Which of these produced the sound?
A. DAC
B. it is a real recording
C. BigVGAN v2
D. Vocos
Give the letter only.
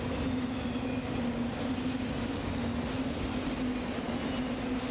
B